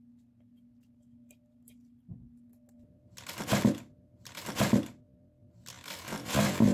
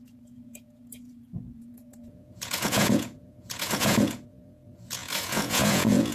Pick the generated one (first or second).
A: second